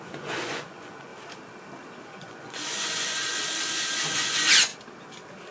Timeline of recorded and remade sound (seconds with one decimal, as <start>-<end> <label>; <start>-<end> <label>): 0.0-1.1 remade; 1.1-2.0 recorded; 2.0-3.4 remade; 3.4-4.1 recorded; 4.1-4.7 remade; 4.7-5.5 recorded